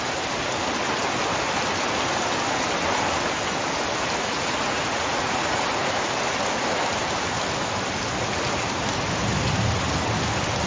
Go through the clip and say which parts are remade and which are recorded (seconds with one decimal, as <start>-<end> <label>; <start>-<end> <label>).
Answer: 0.0-4.2 recorded; 4.2-5.7 remade; 5.7-10.7 recorded